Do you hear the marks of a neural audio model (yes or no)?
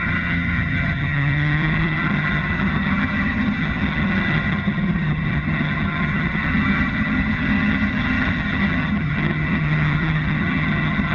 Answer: yes